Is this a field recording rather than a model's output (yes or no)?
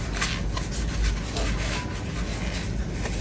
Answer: yes